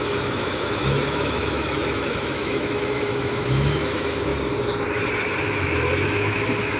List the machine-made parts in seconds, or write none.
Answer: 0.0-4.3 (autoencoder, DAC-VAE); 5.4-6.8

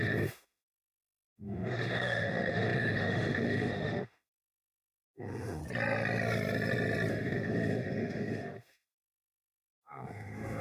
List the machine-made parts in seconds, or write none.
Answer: 0.0-5.6 (autoencoder, DAC-VAE); 7.1-10.6

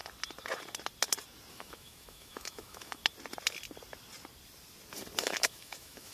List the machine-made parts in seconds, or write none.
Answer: 1.5-3.0 (autoencoder, DAC-VAE); 5.2-6.1

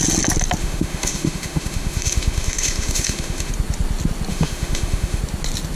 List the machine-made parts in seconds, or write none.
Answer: 0.6-3.5 (autoencoder, DAC-VAE); 4.3-5.2

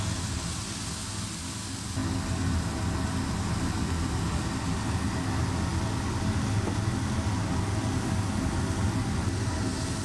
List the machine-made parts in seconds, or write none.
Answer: none

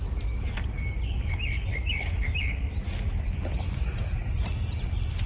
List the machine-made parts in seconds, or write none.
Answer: 1.7-2.6 (autoencoder, DAC-VAE)